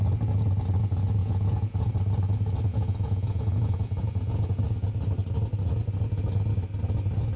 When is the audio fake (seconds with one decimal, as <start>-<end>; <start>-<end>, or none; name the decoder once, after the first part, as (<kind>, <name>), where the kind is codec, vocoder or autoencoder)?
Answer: 1.2-1.9 (vocoder, Vocos); 2.7-4.6